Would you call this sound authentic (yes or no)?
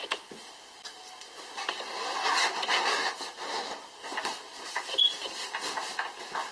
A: yes